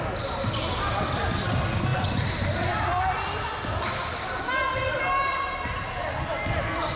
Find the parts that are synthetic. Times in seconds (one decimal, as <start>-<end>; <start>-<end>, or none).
none